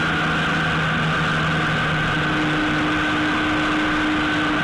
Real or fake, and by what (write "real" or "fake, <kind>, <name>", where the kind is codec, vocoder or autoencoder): real